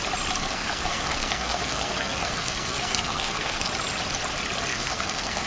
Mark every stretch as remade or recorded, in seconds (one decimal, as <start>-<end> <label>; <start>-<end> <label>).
0.0-0.4 recorded; 0.4-3.7 remade; 3.7-4.7 recorded; 4.7-5.5 remade